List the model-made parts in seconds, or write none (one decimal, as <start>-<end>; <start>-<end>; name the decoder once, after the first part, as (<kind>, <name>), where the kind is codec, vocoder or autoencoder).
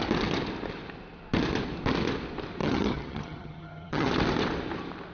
2.6-4.1 (vocoder, HiFi-GAN)